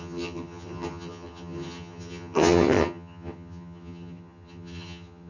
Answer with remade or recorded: remade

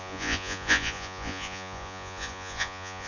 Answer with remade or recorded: remade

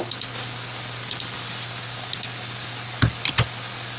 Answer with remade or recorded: recorded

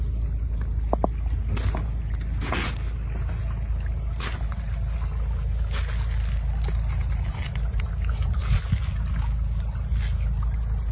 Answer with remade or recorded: recorded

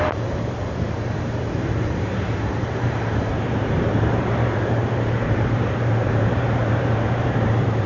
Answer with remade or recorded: remade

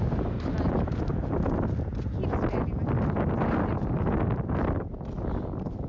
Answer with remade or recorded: recorded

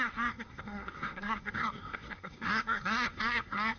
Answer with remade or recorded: remade